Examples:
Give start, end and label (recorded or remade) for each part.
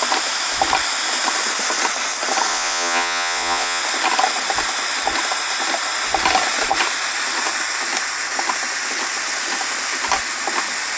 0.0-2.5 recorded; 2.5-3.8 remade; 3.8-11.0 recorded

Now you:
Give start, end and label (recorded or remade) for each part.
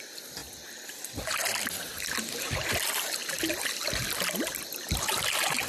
0.0-5.7 recorded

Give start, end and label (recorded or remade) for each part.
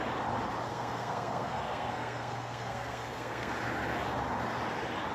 0.0-0.7 recorded; 0.7-3.5 remade; 3.5-5.1 recorded